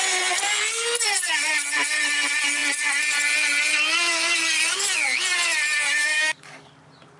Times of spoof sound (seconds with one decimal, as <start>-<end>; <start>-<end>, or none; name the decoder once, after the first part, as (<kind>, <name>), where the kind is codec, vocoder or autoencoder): 6.0-6.7 (codec, DAC)